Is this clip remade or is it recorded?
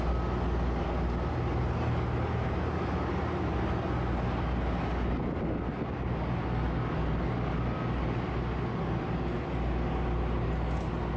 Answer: recorded